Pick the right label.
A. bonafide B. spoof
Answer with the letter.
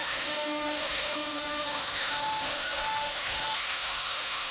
B